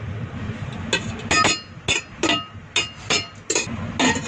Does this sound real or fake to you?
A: real